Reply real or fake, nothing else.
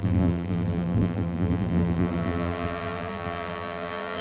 fake